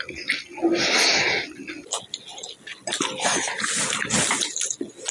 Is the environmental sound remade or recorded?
recorded